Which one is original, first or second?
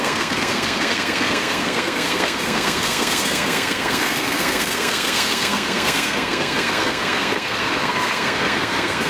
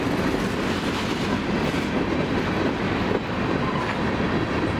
second